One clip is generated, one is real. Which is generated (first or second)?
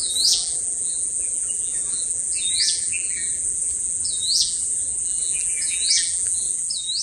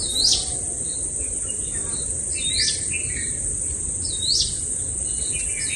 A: first